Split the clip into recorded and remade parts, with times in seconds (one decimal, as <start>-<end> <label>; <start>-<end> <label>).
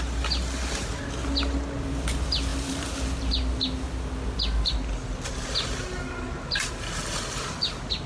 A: 0.0-2.5 recorded; 2.5-3.3 remade; 3.3-8.1 recorded